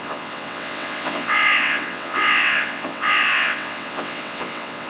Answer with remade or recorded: remade